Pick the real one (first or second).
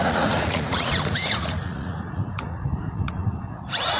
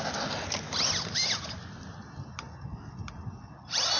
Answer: second